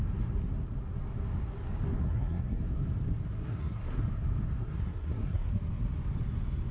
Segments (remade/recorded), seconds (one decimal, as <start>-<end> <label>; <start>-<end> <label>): 0.0-2.0 recorded; 2.0-2.6 remade; 2.6-3.4 recorded; 3.4-4.0 remade; 4.0-4.6 recorded; 4.6-5.5 remade; 5.5-6.7 recorded